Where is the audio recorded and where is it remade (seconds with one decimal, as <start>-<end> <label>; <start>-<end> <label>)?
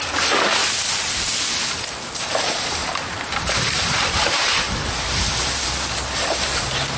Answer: 0.0-2.8 recorded; 2.8-7.0 remade